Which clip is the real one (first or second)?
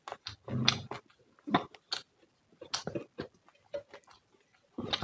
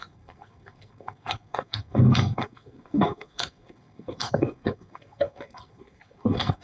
first